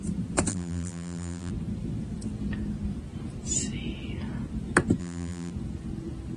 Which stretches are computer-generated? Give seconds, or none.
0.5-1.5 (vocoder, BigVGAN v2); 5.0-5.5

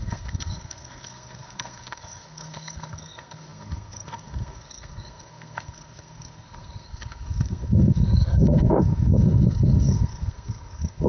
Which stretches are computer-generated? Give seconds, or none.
0.0-11.1 (codec, SNAC)